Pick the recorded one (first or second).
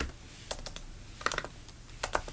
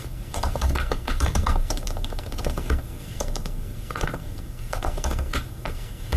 first